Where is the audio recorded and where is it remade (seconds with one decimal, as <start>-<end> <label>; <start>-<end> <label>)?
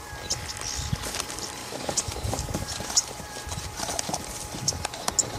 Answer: 0.0-1.6 recorded; 1.6-2.9 remade; 2.9-5.4 recorded